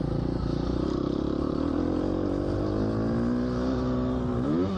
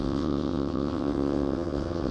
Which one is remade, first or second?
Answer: second